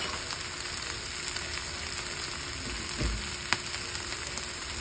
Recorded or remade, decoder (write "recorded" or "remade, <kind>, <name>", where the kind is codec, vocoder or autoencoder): recorded